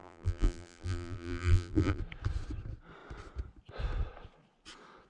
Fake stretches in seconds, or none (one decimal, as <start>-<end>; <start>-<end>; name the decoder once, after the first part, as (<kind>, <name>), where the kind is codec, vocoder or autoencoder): 0.0-2.0 (vocoder, BigVGAN v2)